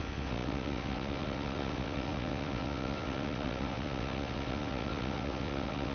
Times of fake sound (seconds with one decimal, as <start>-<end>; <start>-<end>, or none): 0.0-5.9

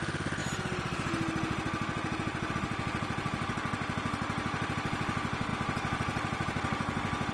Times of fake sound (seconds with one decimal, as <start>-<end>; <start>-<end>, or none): none

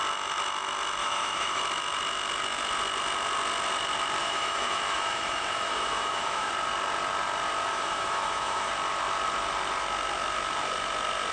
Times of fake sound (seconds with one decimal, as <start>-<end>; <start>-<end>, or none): 1.0-1.6; 4.2-6.5; 7.7-8.7

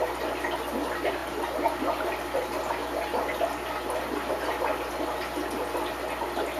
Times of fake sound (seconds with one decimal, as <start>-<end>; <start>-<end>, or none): none

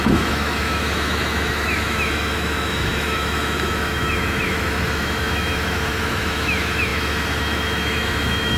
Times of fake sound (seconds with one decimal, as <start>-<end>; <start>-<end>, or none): 0.0-8.6

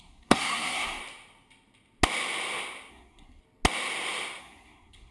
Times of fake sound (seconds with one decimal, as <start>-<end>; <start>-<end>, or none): 0.0-1.0; 2.9-3.4; 4.4-5.1